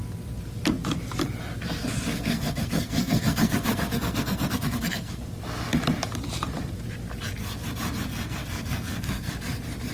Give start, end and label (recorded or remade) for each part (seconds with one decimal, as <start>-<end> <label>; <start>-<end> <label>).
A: 0.0-1.8 recorded; 1.8-5.2 remade; 5.2-8.1 recorded; 8.1-9.3 remade; 9.3-9.9 recorded